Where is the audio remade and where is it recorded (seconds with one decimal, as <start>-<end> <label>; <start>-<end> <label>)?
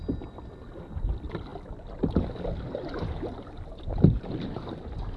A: 0.0-5.2 recorded